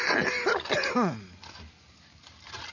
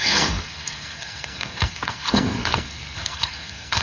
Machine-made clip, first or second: second